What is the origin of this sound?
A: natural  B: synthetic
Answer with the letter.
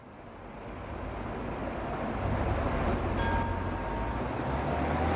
A